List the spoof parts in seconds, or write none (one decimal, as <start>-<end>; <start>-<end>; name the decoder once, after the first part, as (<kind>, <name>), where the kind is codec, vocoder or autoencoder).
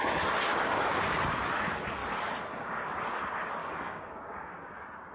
0.5-1.2 (codec, DAC); 2.0-3.0; 3.6-4.5